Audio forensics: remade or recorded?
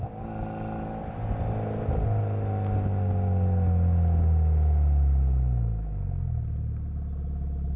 recorded